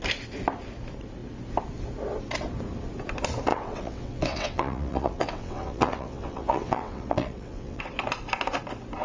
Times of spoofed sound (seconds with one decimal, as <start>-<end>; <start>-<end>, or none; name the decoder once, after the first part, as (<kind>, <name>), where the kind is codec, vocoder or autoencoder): 3.5-7.8 (vocoder, WaveNeXt)